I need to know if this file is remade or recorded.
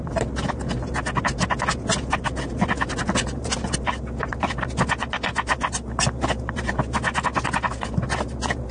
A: recorded